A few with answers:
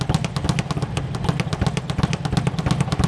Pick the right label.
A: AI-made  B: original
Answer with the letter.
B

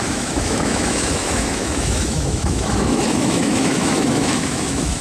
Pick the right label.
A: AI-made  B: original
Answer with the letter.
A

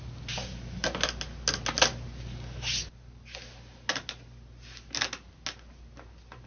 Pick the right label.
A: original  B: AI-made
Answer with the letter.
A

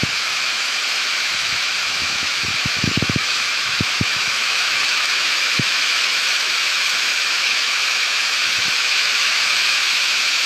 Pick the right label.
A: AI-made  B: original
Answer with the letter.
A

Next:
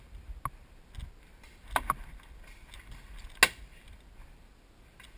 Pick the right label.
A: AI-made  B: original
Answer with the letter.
B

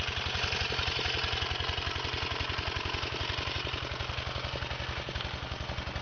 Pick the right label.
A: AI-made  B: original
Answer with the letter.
B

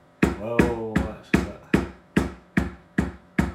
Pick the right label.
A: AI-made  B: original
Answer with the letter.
A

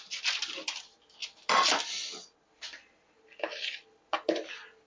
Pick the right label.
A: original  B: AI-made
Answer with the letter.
A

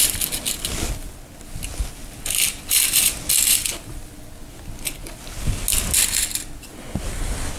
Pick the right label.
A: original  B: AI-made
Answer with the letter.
A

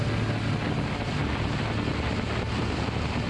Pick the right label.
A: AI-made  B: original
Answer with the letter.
B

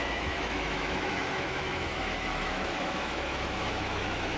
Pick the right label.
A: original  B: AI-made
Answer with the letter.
B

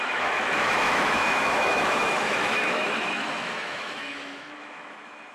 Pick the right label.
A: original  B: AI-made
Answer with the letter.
B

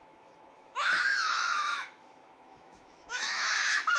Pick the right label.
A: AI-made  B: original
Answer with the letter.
A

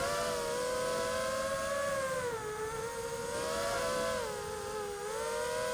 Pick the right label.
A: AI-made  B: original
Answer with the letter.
B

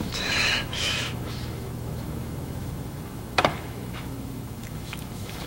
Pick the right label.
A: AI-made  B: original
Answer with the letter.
A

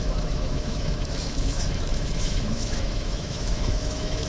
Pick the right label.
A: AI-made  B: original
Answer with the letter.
A